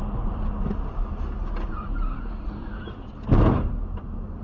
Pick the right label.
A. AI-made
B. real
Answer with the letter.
B